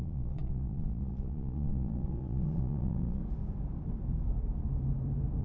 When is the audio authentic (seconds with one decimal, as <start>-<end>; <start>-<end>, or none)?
3.2-5.4